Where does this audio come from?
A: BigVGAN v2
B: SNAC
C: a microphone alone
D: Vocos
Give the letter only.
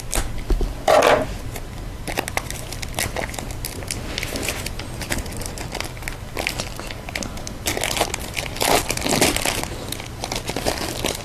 C